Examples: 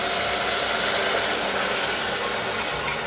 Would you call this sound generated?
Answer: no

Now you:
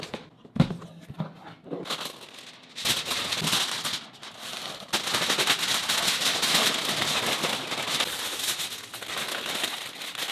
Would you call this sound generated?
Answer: no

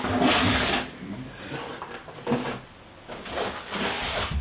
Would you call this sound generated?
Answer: no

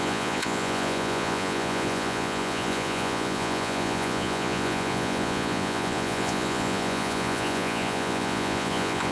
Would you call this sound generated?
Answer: yes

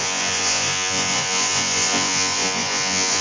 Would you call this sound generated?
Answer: yes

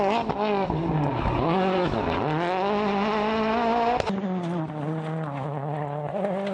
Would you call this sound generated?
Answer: no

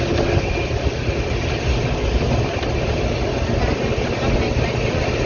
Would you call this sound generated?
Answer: no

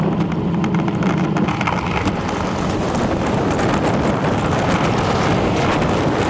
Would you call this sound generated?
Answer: no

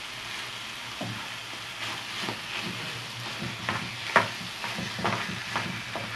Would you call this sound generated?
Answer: no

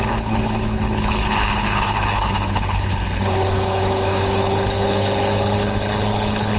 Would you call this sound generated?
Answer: yes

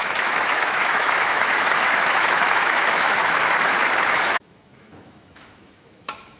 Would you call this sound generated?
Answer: yes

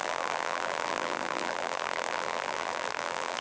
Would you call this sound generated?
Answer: yes